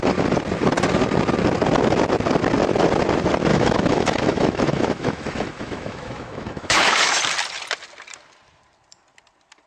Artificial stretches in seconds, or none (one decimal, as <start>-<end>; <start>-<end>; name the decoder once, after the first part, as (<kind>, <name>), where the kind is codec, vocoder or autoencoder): 3.5-7.2 (autoencoder, DAC-VAE)